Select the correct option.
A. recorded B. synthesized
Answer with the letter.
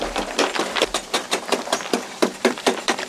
B